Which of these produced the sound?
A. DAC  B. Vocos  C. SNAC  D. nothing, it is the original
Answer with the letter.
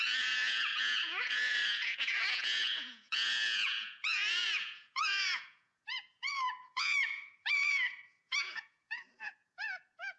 B